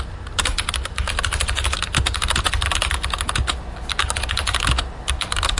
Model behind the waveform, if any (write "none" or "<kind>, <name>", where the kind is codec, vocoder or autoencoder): none